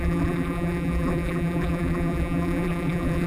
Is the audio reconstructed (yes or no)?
yes